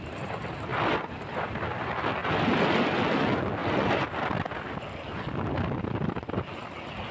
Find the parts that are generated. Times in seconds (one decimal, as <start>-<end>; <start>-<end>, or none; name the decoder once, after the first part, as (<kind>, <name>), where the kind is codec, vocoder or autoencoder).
none